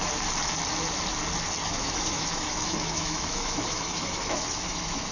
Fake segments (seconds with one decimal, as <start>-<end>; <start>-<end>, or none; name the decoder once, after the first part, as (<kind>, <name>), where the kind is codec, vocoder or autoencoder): 1.6-5.1 (autoencoder, DAC-VAE)